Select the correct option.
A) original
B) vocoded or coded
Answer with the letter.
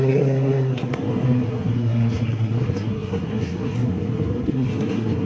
B